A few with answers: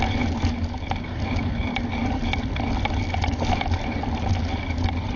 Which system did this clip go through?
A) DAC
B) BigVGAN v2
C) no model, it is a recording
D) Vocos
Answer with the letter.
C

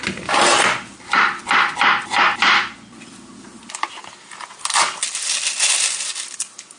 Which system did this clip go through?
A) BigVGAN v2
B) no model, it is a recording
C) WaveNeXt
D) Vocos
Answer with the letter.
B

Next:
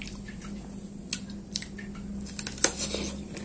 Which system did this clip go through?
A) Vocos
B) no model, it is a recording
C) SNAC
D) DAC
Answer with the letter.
B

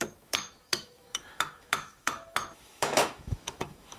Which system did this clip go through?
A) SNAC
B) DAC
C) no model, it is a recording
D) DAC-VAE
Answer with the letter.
D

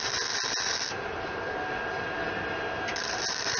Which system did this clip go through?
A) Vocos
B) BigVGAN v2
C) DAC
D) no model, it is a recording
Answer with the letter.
D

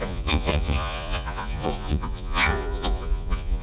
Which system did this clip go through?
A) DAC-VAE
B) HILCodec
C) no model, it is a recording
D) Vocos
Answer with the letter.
D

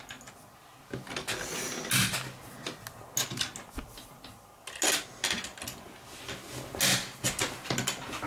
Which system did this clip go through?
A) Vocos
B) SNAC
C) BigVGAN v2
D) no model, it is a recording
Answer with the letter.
D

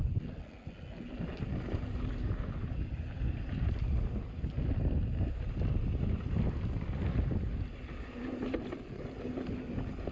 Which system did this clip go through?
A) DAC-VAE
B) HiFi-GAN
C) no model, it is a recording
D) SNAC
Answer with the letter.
C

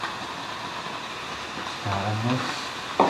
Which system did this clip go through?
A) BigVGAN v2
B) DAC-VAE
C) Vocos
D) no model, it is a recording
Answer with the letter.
D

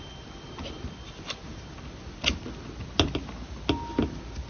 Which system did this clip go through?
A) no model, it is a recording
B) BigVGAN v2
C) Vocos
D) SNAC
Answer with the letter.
A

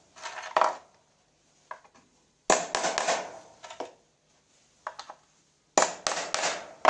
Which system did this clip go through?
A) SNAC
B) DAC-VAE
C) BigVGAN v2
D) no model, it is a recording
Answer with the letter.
D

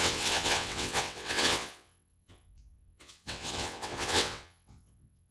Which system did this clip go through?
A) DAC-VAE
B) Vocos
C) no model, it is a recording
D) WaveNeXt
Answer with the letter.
D